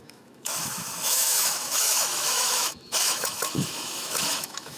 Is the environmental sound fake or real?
fake